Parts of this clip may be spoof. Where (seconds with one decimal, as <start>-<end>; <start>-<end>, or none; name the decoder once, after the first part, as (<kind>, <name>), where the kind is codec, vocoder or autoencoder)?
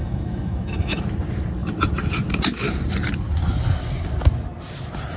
0.0-1.0 (autoencoder, DAC-VAE)